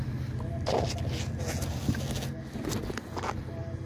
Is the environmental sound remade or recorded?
recorded